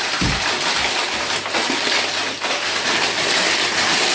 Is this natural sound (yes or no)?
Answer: yes